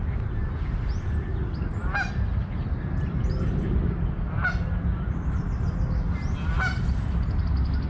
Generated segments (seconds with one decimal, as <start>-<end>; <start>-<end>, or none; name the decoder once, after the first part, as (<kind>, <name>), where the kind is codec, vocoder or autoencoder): none